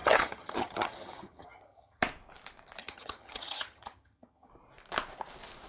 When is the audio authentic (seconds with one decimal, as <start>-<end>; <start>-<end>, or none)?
2.0-2.8; 4.5-5.7